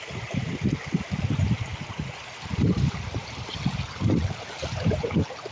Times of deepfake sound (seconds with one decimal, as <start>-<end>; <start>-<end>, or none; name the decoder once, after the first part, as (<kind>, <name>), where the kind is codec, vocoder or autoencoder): none